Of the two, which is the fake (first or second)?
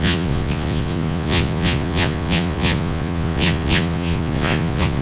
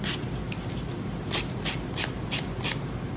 first